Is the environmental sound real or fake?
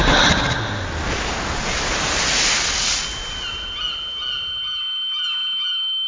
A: real